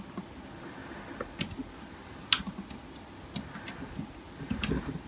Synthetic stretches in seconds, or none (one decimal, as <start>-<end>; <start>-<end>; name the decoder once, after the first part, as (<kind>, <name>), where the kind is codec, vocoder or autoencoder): none